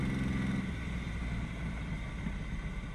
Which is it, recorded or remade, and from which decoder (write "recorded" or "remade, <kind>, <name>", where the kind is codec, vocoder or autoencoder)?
recorded